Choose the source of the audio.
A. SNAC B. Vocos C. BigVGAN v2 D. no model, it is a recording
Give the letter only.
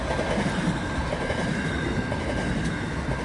D